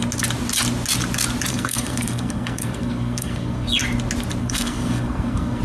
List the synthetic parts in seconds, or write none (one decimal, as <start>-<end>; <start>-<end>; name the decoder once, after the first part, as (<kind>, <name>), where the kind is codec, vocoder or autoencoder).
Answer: 1.5-3.8 (codec, SNAC); 4.4-5.6